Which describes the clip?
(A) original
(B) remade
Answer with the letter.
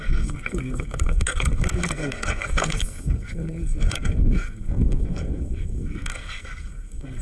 B